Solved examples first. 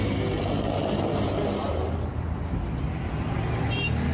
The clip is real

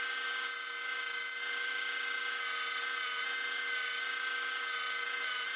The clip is real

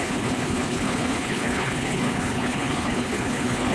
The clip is fake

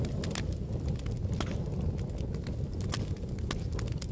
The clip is real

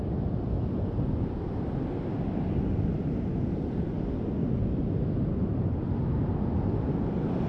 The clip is real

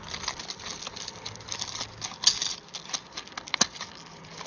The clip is real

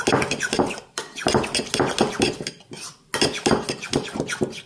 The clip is real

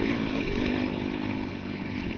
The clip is fake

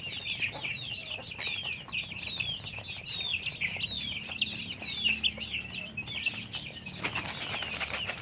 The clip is real